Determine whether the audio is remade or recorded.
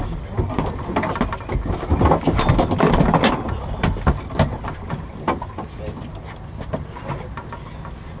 recorded